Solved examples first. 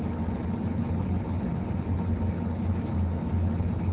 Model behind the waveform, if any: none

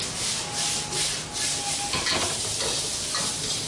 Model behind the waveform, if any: none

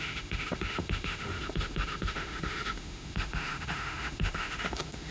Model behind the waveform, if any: autoencoder, DAC-VAE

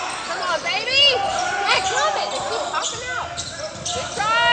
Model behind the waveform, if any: none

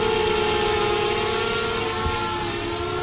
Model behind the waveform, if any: none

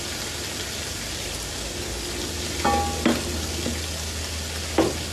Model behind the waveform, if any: none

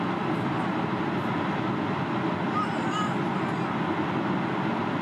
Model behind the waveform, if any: none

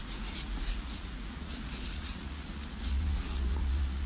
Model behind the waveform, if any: vocoder, Vocos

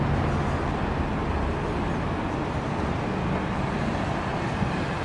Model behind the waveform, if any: none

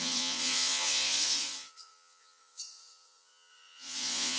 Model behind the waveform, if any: vocoder, Vocos